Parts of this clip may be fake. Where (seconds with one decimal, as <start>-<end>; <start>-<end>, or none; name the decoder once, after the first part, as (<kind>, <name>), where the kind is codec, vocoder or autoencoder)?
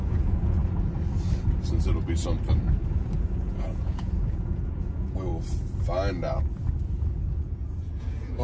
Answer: 0.0-0.6 (vocoder, Vocos); 3.4-5.3; 7.1-8.4